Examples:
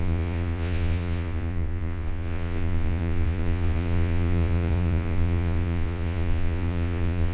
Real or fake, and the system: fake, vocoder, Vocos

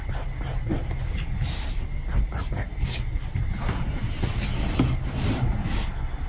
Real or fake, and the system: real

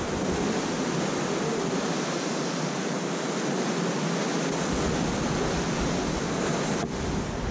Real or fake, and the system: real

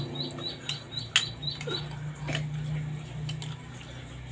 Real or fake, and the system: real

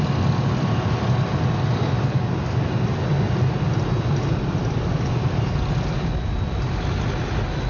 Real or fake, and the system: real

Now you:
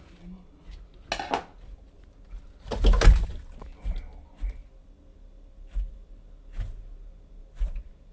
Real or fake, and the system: real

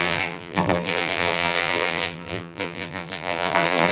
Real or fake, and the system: fake, vocoder, BigVGAN v2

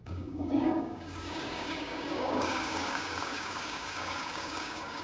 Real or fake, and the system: fake, codec, DAC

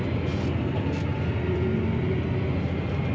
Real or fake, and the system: real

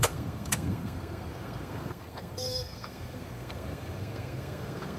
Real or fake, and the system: fake, codec, SNAC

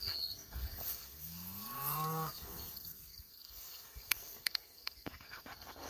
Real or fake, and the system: fake, codec, SNAC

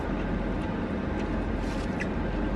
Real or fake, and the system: real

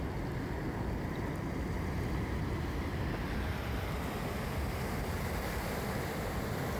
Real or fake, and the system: real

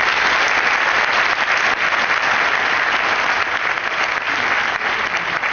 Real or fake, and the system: real